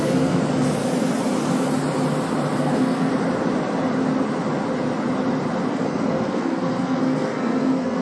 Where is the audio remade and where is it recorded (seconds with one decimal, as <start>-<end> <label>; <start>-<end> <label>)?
0.0-0.4 remade; 0.4-2.6 recorded; 2.6-3.1 remade; 3.1-5.7 recorded; 5.7-8.0 remade